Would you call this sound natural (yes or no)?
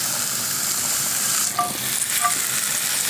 yes